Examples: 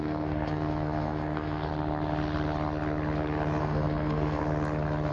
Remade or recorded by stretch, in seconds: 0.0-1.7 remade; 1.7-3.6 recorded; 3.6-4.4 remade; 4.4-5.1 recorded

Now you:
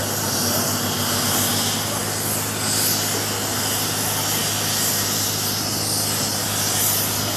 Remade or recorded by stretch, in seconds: 0.0-7.4 recorded

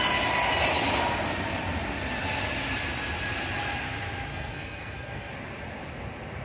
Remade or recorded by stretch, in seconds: 0.0-4.3 recorded; 4.3-5.3 remade; 5.3-6.4 recorded

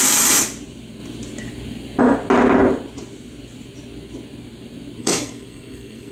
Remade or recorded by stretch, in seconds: 0.0-5.0 recorded; 5.0-6.1 remade

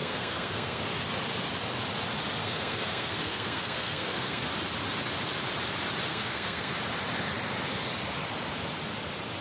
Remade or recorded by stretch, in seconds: 0.0-0.8 remade; 0.8-2.4 recorded; 2.4-4.5 remade; 4.5-6.1 recorded; 6.1-6.7 remade; 6.7-9.4 recorded

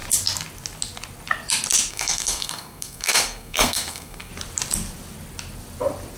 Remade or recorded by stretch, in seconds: 0.0-1.9 recorded; 1.9-4.3 remade; 4.3-6.2 recorded